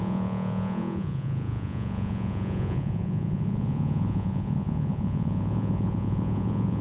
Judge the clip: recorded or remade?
remade